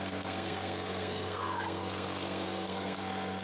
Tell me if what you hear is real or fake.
fake